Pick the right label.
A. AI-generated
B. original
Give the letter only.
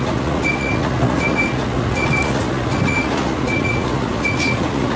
A